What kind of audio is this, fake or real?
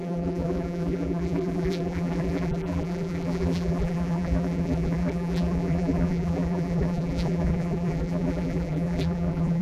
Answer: fake